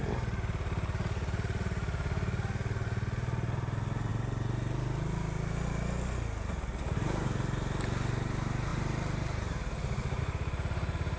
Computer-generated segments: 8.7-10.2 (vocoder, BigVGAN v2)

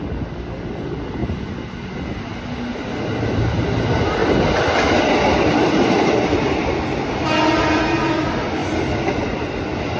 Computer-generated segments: none

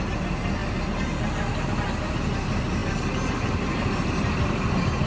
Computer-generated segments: none

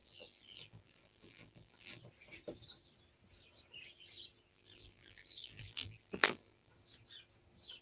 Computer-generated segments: 0.0-2.0 (vocoder, BigVGAN v2); 4.5-6.7

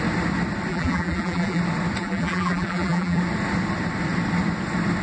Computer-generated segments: 0.7-1.6 (vocoder, BigVGAN v2); 2.0-3.2